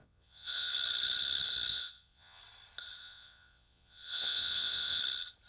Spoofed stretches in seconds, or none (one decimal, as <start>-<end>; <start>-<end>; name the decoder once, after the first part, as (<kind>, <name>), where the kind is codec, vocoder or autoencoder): 0.0-0.7 (vocoder, WaveNeXt); 1.7-2.4; 3.0-5.0